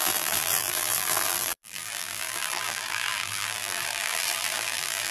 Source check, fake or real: fake